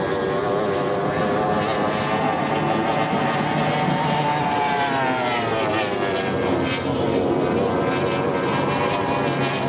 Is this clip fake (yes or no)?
no